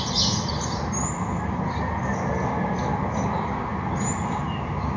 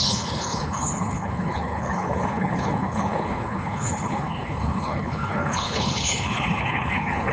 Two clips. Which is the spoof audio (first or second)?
second